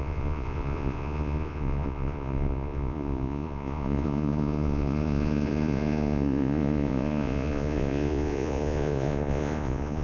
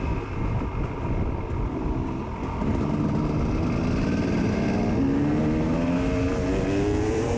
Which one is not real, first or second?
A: first